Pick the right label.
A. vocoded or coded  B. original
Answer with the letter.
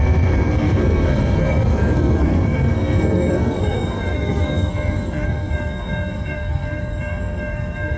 A